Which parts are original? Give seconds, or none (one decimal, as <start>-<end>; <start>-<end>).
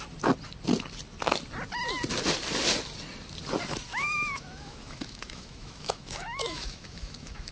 0.0-3.9